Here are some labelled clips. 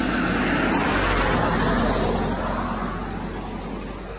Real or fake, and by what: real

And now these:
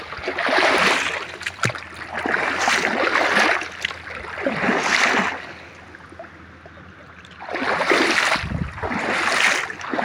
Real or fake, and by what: real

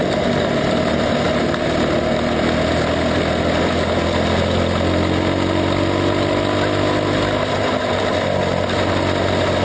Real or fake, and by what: real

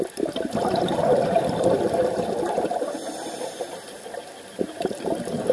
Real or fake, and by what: real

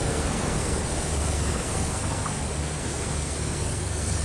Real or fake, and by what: fake, codec, SNAC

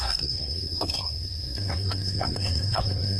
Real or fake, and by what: fake, codec, SNAC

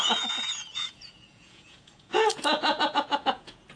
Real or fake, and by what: fake, vocoder, Vocos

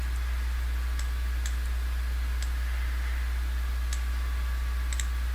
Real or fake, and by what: real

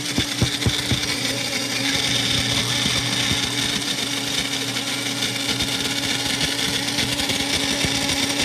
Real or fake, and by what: real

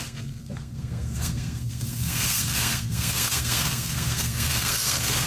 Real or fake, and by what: fake, codec, SNAC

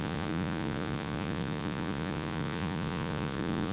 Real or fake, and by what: fake, vocoder, Vocos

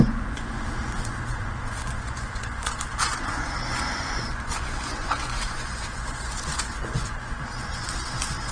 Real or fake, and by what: fake, vocoder, Vocos